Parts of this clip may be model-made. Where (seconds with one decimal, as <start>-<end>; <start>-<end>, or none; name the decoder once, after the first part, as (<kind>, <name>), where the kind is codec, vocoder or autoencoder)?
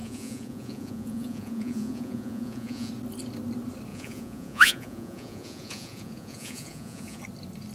0.0-2.9 (vocoder, Vocos); 3.9-7.2